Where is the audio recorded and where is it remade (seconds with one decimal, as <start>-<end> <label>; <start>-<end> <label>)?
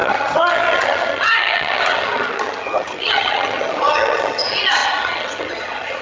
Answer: 0.0-6.0 remade